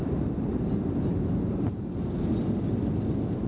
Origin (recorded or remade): recorded